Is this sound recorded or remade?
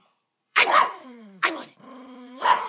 remade